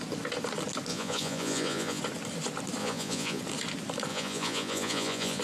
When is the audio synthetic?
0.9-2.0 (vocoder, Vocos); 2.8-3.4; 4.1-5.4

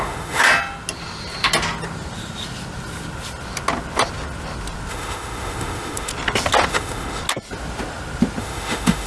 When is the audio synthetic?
0.0-0.4 (autoencoder, DAC-VAE); 4.9-6.1; 6.7-7.2; 8.4-9.1

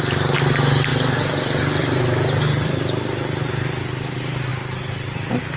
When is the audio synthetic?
0.9-3.5 (vocoder, BigVGAN v2)

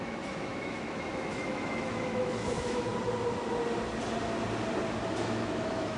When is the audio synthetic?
0.0-2.9 (autoencoder, DAC-VAE); 5.2-6.0

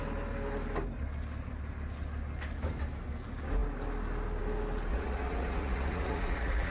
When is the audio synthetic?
4.9-6.7 (vocoder, Vocos)

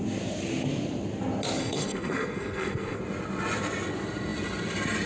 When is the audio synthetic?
1.6-3.0 (codec, SNAC)

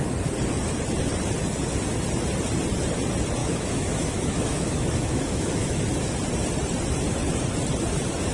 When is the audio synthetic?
3.4-5.8 (autoencoder, DAC-VAE)

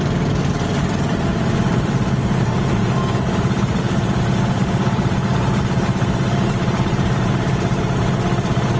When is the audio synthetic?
none